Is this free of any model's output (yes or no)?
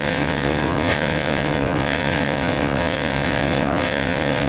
no